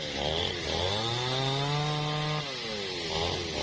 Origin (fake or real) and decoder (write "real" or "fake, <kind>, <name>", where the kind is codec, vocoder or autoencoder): real